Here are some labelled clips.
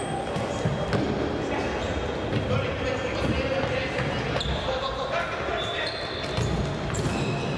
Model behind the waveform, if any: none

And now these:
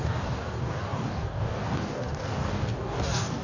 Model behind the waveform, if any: codec, DAC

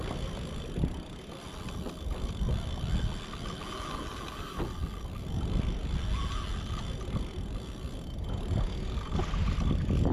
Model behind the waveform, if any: none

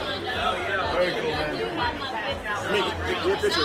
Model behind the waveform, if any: none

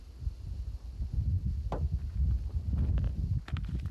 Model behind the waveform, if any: none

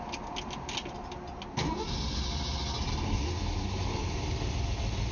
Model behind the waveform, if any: none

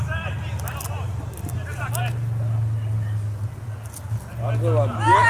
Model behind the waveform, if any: none